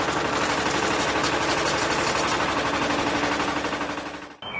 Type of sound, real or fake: real